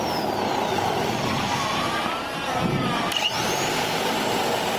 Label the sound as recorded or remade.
remade